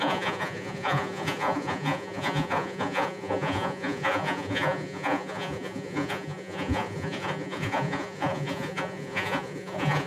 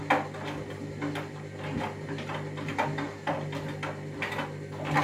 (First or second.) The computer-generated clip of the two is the first